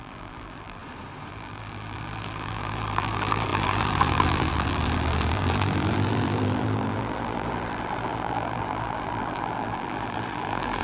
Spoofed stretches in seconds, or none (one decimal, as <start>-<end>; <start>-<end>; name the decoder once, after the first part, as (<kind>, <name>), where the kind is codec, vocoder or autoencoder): 0.0-0.8 (vocoder, BigVGAN v2); 1.3-10.8